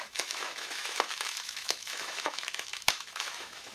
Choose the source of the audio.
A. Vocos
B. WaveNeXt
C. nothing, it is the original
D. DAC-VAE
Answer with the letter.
D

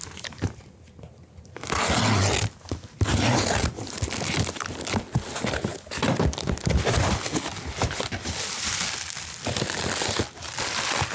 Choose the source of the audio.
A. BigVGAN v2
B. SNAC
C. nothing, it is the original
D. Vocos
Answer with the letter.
C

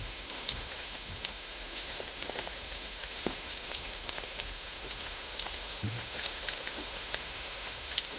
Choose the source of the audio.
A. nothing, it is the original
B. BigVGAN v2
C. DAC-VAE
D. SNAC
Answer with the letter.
C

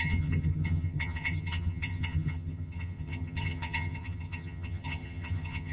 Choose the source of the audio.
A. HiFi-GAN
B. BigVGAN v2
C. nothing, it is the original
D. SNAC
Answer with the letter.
A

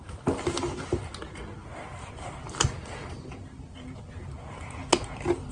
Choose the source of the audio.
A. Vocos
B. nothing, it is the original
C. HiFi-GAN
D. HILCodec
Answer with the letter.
B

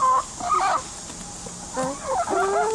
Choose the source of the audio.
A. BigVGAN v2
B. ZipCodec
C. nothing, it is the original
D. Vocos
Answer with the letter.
C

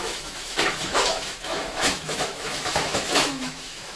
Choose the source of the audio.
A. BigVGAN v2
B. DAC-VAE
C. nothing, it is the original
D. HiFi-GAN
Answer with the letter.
B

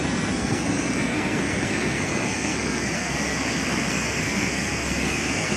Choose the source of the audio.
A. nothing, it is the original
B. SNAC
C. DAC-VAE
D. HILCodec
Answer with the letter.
B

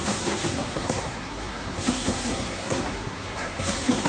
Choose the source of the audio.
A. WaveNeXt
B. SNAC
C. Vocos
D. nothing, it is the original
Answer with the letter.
B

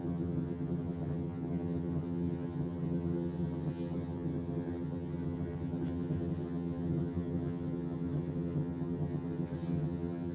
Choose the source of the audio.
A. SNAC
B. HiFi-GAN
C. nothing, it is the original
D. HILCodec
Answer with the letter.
B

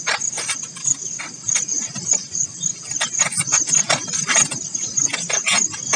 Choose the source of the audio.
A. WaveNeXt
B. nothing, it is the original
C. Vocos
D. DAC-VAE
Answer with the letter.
B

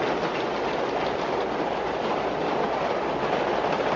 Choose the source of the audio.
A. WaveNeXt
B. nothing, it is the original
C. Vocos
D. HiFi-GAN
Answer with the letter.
B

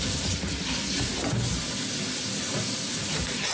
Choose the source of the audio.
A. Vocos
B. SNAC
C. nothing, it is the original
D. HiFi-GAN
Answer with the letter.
C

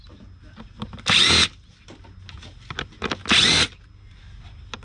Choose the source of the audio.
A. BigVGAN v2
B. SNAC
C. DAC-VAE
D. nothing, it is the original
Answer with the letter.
D